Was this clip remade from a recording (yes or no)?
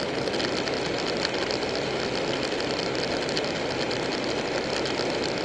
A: no